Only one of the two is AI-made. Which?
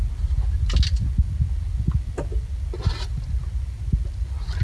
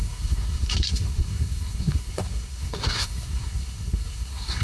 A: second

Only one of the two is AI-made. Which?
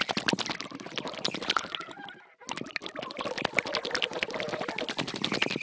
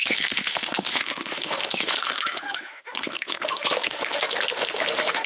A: second